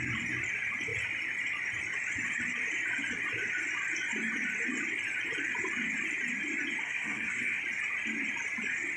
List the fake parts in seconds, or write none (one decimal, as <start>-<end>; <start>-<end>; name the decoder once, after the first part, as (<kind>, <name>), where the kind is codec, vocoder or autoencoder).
6.8-7.6 (codec, SNAC)